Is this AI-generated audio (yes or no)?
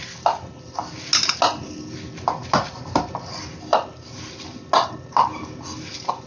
no